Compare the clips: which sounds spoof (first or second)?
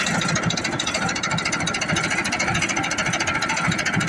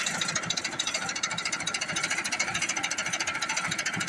second